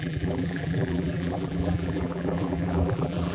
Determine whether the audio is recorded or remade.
remade